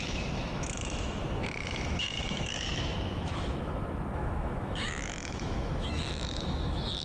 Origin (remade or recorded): remade